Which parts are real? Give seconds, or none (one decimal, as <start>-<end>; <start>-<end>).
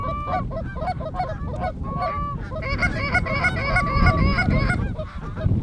0.0-0.7; 1.2-2.8; 3.4-4.3